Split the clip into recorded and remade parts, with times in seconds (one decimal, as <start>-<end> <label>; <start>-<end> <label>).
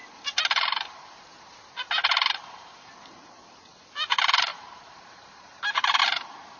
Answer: 0.0-3.9 remade; 3.9-4.5 recorded; 4.5-6.0 remade; 6.0-6.6 recorded